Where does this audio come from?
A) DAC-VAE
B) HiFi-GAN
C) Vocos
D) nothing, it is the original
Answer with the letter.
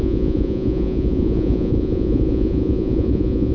C